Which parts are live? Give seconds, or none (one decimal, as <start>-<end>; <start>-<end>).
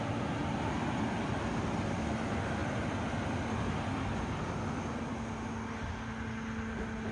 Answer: 0.0-7.1